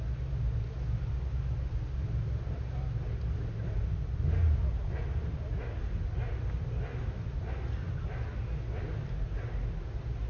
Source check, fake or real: real